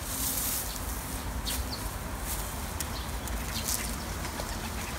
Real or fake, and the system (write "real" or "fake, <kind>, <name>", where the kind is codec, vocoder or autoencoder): real